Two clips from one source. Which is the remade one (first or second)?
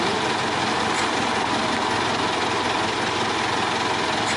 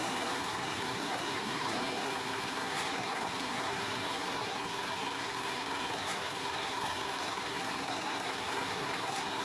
second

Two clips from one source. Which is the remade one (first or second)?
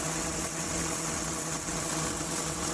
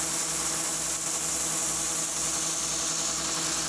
first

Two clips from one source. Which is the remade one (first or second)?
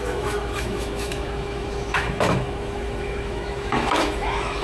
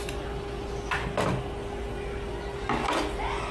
first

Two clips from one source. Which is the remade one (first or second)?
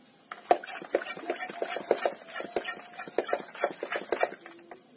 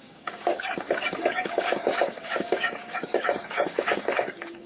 second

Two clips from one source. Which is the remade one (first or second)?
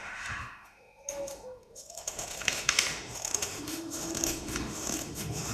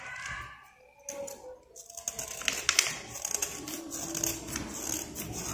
first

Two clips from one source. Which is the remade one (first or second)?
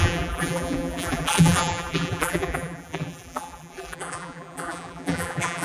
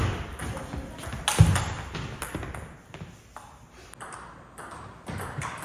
first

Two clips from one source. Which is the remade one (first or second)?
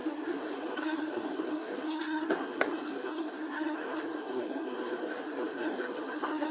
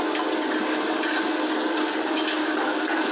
first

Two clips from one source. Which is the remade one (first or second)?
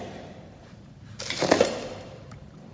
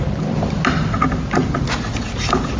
first